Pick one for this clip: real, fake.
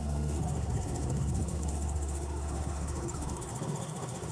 fake